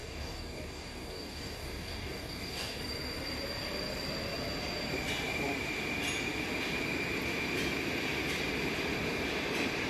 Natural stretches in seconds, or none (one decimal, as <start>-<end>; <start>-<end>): 2.8-9.9